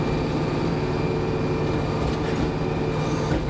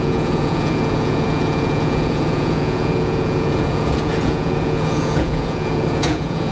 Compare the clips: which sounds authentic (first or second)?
first